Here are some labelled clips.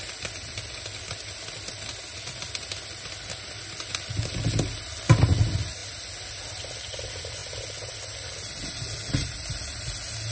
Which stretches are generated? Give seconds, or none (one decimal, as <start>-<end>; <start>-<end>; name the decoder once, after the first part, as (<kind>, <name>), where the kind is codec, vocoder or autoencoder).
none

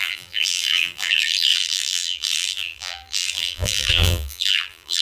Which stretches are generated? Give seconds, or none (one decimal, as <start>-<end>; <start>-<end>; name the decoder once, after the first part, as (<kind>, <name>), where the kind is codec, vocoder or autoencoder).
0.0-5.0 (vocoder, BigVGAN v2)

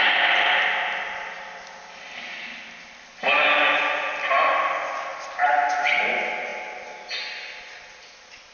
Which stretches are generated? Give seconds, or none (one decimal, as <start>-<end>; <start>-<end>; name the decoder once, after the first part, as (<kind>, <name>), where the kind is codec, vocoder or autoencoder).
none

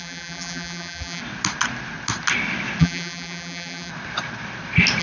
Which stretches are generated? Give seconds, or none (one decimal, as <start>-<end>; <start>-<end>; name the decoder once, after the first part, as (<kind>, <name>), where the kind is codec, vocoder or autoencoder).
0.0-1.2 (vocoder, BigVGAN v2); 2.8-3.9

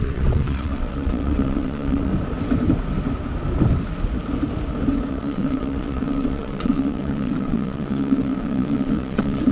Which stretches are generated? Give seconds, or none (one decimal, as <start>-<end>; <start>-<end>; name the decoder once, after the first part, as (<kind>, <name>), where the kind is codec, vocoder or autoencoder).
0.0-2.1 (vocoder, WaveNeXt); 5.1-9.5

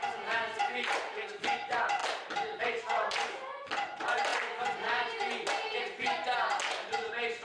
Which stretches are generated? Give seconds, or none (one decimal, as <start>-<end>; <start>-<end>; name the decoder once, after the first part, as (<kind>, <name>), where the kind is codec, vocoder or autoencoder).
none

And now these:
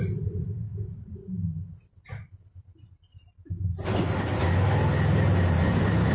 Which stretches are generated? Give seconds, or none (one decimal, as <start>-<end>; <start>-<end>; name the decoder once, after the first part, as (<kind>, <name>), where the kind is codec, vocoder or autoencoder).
none